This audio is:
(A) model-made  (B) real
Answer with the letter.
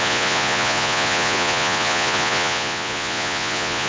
A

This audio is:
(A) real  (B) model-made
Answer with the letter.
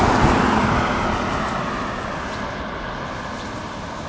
A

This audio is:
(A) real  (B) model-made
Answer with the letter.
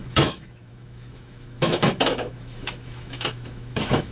B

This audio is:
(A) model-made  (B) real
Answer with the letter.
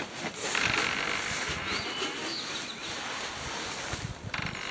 B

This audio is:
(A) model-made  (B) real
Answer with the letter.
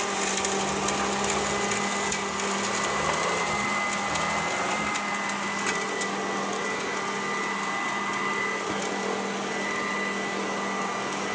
B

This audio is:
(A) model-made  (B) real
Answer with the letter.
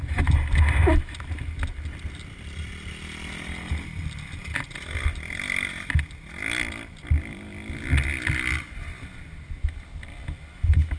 B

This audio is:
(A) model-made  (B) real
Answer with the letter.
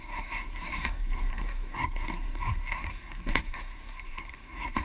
A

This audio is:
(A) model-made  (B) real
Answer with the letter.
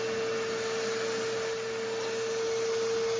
B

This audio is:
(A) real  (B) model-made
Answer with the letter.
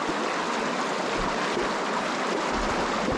A